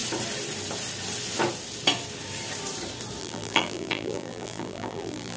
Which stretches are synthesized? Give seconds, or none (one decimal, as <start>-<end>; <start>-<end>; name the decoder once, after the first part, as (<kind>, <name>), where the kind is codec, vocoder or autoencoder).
3.2-5.4 (vocoder, BigVGAN v2)